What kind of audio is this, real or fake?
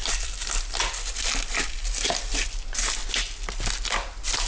real